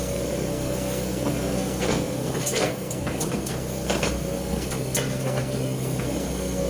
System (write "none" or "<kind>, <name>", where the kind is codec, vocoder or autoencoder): codec, SNAC